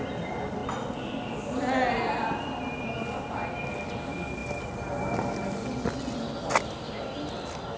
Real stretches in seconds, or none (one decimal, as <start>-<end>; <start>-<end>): 0.0-7.8